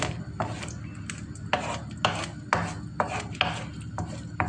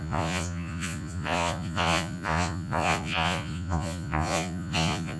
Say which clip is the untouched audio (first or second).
first